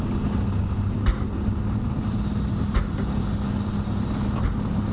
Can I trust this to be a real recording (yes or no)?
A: yes